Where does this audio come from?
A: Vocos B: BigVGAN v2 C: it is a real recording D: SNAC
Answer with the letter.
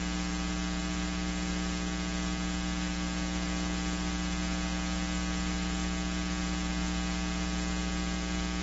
C